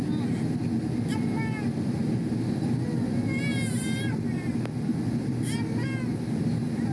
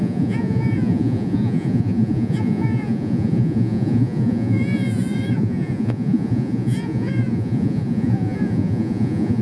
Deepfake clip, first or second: second